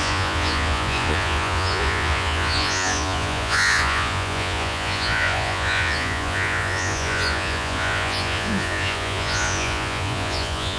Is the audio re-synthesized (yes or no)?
yes